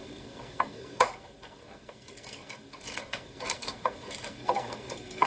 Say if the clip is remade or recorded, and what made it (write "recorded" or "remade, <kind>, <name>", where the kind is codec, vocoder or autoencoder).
remade, codec, SNAC